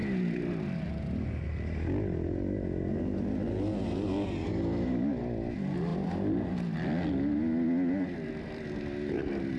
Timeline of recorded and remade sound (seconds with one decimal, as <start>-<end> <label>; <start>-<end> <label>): 0.0-9.6 recorded